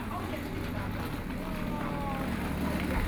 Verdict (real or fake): real